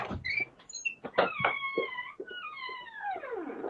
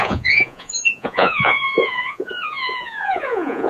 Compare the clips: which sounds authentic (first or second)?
first